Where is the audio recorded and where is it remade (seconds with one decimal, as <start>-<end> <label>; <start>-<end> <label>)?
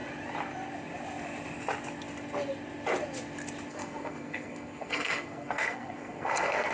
0.0-3.7 recorded; 3.7-6.7 remade